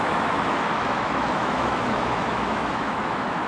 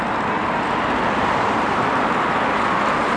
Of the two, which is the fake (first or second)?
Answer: first